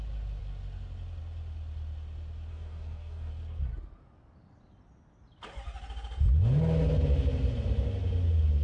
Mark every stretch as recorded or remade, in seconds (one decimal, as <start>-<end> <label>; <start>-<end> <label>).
0.0-2.5 recorded; 2.5-3.3 remade; 3.3-8.6 recorded